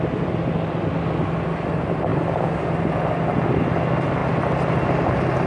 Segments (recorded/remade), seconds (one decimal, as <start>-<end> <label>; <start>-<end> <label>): 0.0-5.5 recorded

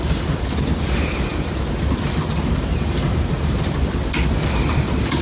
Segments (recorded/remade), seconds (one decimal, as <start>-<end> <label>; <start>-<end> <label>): 0.0-5.2 recorded

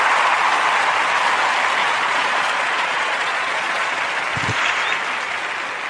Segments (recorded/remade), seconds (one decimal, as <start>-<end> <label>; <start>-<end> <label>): 0.0-1.8 recorded; 1.8-4.0 remade; 4.0-5.9 recorded

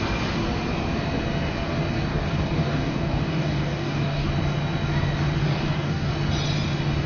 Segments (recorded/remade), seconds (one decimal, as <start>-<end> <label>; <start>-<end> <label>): 0.0-2.1 recorded; 2.1-4.3 remade; 4.3-5.4 recorded; 5.4-6.1 remade; 6.1-7.1 recorded

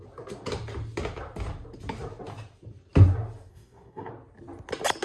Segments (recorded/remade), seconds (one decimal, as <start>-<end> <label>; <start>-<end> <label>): 0.0-3.5 recorded; 3.5-4.1 remade; 4.1-5.0 recorded

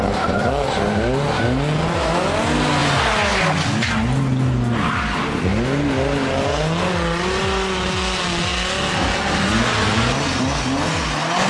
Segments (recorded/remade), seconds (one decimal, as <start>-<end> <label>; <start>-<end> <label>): 0.0-11.5 recorded

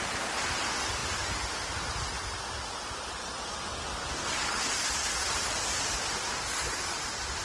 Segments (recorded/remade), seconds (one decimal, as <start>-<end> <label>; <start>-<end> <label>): 0.0-7.4 recorded